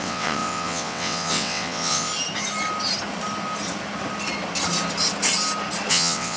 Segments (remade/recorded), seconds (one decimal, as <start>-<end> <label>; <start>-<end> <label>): 0.0-2.1 remade; 2.1-5.9 recorded; 5.9-6.4 remade